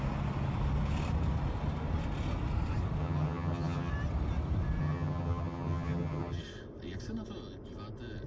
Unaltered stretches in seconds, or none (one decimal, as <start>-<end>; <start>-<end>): 0.0-3.0; 3.9-4.8; 6.4-8.3